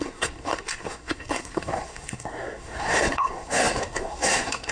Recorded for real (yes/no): no